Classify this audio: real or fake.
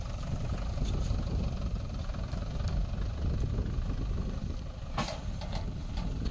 real